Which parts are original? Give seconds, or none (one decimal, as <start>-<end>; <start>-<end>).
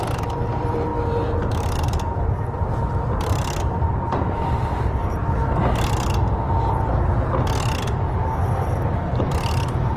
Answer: 0.9-1.5; 5.0-9.2